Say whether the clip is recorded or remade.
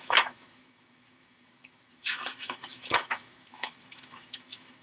remade